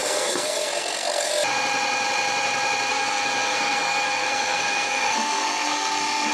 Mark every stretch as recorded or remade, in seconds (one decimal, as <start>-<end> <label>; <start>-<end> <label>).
0.0-1.3 remade; 1.3-2.9 recorded; 2.9-6.3 remade